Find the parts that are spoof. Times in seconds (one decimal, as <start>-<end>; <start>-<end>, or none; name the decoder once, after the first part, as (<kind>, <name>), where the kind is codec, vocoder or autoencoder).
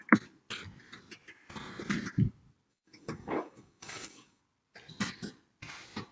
2.7-4.4 (codec, DAC)